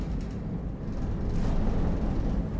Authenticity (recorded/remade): recorded